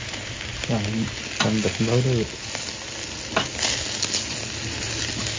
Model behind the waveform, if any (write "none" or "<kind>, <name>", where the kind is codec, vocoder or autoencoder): none